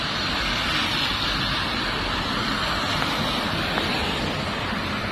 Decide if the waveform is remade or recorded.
recorded